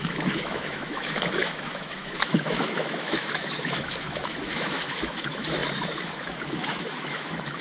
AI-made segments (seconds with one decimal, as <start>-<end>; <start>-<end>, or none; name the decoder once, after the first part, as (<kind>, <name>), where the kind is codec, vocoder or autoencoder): 0.0-7.6 (autoencoder, DAC-VAE)